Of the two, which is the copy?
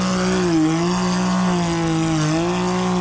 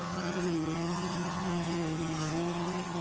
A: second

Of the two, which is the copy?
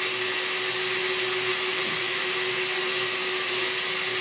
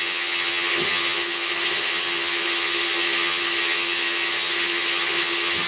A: second